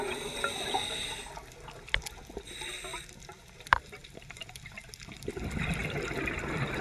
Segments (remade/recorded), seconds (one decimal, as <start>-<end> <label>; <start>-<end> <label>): 0.0-6.8 recorded